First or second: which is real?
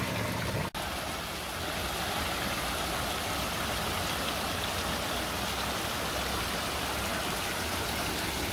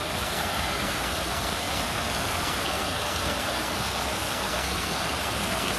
first